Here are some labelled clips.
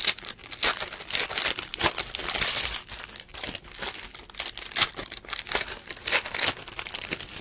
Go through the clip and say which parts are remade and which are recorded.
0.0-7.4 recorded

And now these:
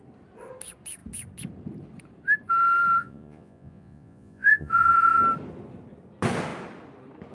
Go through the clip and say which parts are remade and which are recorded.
0.0-3.0 recorded; 3.0-5.2 remade; 5.2-7.3 recorded

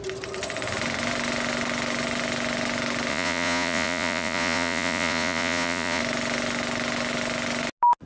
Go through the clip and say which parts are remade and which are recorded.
0.0-3.1 recorded; 3.1-6.0 remade; 6.0-8.1 recorded